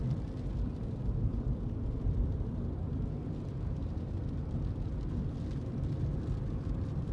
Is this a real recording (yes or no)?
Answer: no